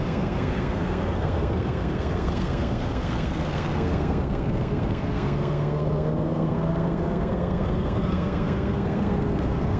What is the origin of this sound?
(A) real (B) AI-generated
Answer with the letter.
B